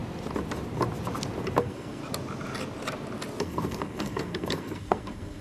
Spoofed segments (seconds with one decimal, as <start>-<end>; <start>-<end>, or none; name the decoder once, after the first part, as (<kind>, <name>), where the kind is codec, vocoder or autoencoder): 1.6-2.0 (codec, SNAC); 3.4-5.4